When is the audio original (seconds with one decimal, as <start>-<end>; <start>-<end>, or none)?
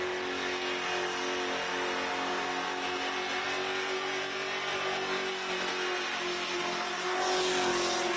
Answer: 0.0-8.2